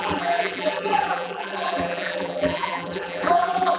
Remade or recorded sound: remade